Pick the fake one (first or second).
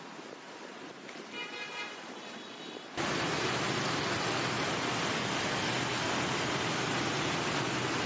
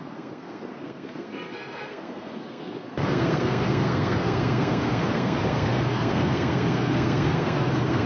second